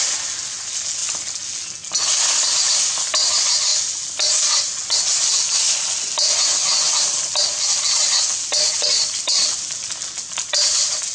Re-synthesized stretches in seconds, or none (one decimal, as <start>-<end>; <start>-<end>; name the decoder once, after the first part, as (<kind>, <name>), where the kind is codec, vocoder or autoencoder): none